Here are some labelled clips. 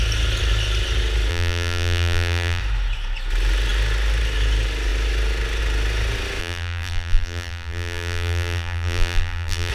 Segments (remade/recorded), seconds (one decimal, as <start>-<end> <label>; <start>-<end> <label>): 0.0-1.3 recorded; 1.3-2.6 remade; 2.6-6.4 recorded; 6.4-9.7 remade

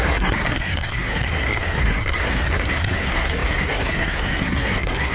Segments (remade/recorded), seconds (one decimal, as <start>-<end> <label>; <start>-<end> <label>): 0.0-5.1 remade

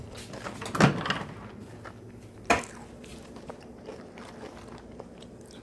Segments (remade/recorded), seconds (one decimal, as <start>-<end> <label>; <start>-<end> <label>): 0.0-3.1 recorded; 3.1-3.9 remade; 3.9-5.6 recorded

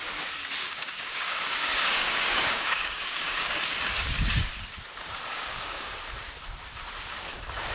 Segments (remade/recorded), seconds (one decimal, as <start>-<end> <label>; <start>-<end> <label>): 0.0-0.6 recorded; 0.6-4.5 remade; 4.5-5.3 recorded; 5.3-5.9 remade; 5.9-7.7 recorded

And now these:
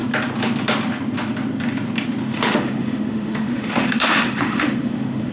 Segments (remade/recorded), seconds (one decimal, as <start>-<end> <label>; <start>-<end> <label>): 0.0-2.3 recorded; 2.3-5.3 remade

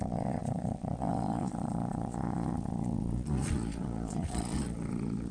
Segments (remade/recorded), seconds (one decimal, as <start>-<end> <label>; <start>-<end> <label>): 0.0-5.3 remade